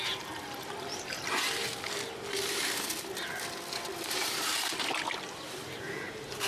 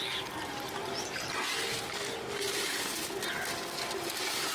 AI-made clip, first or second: first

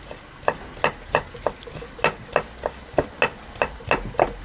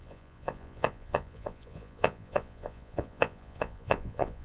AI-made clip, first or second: second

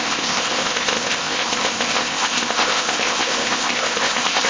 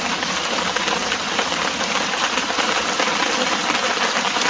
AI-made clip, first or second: first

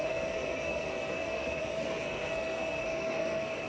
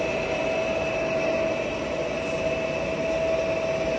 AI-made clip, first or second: first